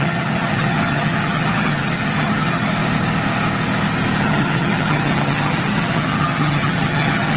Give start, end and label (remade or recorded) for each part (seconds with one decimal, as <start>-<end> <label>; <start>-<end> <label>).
0.0-2.7 remade; 2.7-4.2 recorded; 4.2-7.4 remade

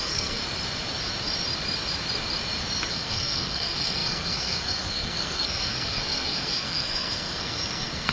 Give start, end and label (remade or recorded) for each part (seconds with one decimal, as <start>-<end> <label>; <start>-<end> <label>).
0.0-0.4 remade; 0.4-2.9 recorded; 2.9-8.1 remade

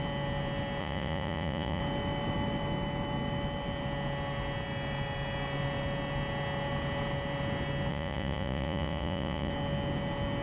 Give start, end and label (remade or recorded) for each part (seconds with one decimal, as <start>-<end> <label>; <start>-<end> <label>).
0.0-0.8 recorded; 0.8-1.8 remade; 1.8-7.9 recorded; 7.9-9.5 remade; 9.5-10.4 recorded